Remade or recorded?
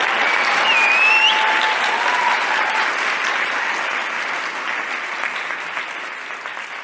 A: recorded